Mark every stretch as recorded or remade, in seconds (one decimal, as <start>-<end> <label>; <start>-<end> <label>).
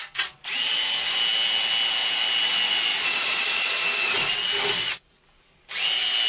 0.0-2.9 recorded; 2.9-3.7 remade; 3.7-6.3 recorded